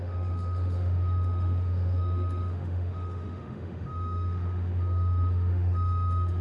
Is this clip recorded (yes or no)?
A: no